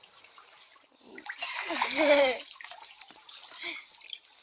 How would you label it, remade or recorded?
remade